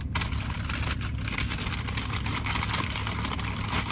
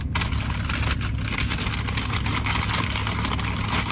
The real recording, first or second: second